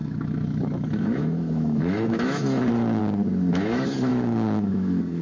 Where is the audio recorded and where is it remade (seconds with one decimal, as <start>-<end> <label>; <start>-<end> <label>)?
0.0-3.0 remade; 3.0-3.5 recorded; 3.5-5.2 remade